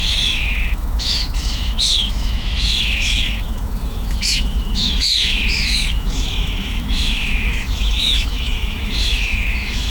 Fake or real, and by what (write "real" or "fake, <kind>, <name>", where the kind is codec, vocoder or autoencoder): fake, autoencoder, DAC-VAE